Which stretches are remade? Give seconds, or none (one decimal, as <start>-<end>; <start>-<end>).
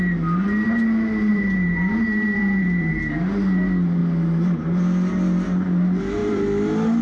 1.3-2.9